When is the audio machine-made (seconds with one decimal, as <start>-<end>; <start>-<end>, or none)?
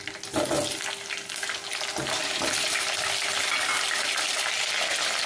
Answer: 2.2-2.9